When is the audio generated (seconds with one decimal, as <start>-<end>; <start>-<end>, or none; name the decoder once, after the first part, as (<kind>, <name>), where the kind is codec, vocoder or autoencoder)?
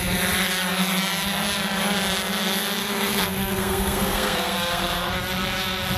2.8-5.2 (codec, SNAC)